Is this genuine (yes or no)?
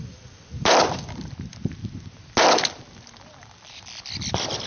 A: yes